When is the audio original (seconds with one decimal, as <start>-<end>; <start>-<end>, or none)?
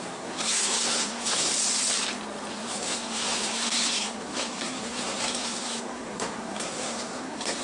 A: 1.5-2.5